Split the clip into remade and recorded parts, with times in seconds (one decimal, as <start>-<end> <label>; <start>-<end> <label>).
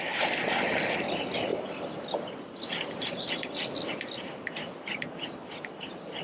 0.0-6.2 recorded